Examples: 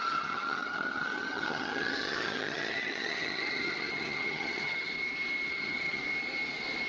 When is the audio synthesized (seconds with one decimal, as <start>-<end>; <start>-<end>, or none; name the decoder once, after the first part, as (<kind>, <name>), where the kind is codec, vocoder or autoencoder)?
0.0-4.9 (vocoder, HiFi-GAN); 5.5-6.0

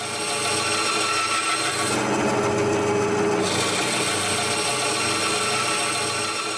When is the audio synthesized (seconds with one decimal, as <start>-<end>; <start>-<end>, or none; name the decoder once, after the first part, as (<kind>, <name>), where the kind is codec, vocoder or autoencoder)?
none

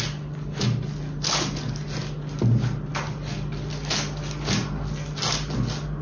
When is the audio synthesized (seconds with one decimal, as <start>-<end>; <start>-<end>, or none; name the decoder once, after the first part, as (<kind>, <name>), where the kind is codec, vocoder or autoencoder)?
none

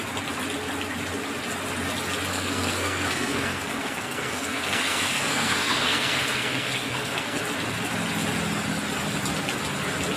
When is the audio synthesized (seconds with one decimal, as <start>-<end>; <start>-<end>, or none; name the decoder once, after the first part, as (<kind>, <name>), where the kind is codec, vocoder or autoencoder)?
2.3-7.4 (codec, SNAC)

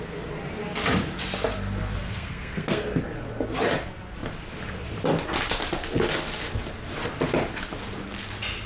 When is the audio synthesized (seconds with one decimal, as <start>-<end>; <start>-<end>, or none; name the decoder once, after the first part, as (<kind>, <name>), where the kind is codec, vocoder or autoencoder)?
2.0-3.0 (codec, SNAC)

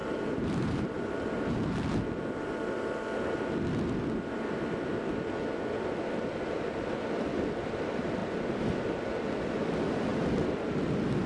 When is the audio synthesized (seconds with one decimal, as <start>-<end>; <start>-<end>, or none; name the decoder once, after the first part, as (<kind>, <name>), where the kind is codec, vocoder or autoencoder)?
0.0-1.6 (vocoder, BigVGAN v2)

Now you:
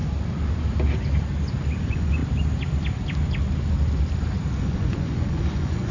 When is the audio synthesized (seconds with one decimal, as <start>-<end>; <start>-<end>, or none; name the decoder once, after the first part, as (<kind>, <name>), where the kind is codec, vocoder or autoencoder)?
1.8-2.2 (vocoder, Vocos); 4.6-5.9

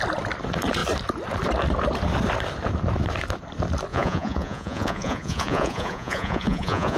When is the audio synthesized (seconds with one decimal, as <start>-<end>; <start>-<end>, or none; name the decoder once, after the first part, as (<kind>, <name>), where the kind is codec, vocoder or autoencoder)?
3.9-7.0 (vocoder, Vocos)